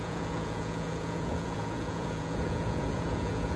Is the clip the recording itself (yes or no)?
no